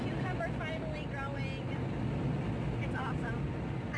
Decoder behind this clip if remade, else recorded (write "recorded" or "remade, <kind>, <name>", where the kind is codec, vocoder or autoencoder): recorded